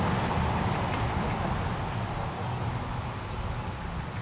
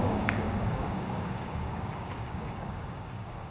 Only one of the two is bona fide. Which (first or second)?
first